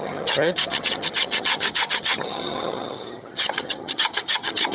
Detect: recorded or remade remade